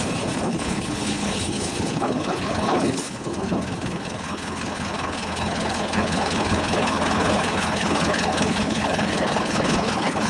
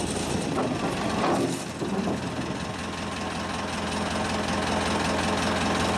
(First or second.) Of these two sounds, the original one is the second